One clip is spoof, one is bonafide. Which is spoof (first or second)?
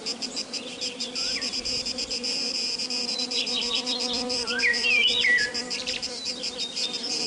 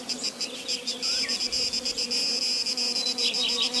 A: first